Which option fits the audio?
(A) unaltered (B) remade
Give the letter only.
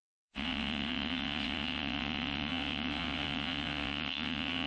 B